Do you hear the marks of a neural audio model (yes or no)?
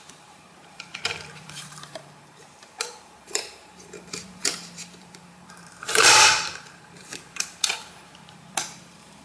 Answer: yes